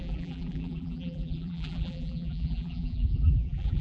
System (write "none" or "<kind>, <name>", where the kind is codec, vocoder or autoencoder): vocoder, BigVGAN v2